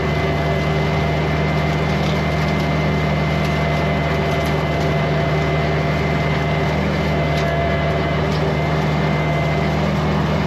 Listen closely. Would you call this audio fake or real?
real